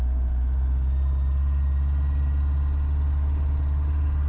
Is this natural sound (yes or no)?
yes